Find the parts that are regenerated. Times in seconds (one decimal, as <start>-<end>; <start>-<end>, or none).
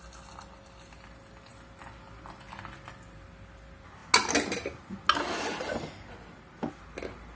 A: none